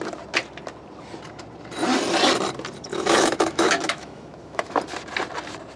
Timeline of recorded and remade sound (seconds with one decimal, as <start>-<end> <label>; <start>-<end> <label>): 0.0-2.9 recorded; 2.9-4.8 remade; 4.8-5.8 recorded